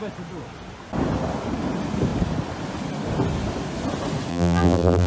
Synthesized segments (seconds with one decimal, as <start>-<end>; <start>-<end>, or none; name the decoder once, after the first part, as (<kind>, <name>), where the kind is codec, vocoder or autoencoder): 4.3-5.1 (vocoder, BigVGAN v2)